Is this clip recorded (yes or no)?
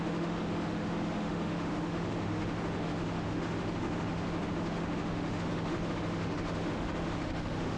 no